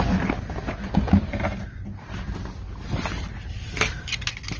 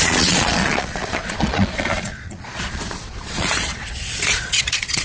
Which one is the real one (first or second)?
first